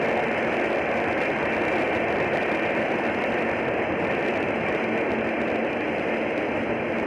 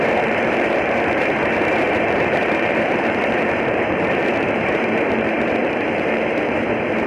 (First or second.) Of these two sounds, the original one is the first